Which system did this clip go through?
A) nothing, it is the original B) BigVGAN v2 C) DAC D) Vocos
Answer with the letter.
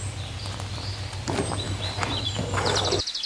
B